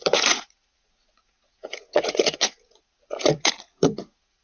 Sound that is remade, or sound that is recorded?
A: remade